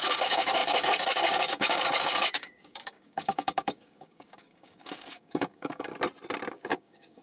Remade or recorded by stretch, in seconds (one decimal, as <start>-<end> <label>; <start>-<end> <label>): 0.0-5.9 remade; 5.9-6.5 recorded; 6.5-7.2 remade